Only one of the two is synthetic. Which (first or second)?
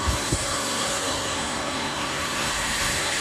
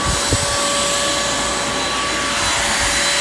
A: first